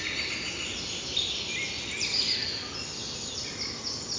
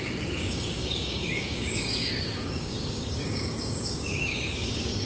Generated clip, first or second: second